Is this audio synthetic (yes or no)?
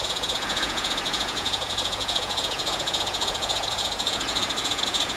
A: yes